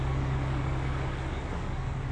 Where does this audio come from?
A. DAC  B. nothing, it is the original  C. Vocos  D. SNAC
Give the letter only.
A